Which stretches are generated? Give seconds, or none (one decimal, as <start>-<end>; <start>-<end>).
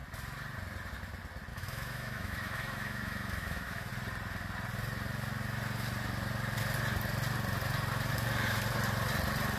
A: 1.5-3.9